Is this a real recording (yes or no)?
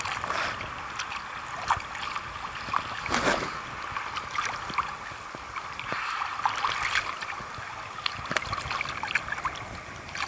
yes